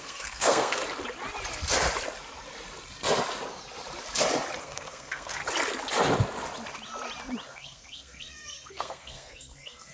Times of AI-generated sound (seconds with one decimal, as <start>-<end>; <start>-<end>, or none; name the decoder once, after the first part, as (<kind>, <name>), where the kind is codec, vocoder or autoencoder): 0.0-0.8 (codec, SNAC); 4.6-5.4; 7.5-9.9